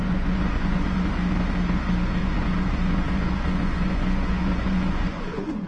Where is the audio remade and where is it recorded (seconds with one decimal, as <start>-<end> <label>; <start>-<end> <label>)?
0.0-1.1 remade; 1.1-2.2 recorded; 2.2-5.7 remade